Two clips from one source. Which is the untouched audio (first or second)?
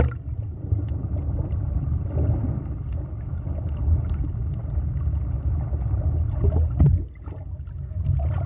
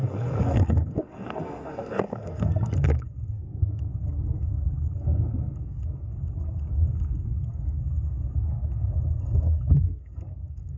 first